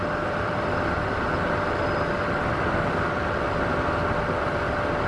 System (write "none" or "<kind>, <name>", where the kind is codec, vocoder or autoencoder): none